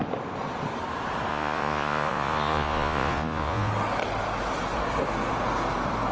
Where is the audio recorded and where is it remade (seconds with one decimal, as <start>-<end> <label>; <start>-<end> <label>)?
0.0-1.3 recorded; 1.3-3.7 remade; 3.7-6.1 recorded